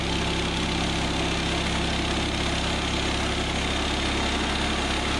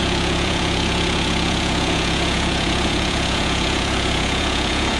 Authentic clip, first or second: first